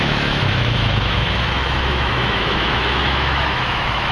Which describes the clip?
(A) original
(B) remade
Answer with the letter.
B